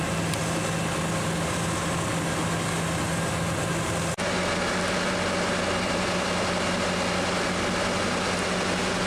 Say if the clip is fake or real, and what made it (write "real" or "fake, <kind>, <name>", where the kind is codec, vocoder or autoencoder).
real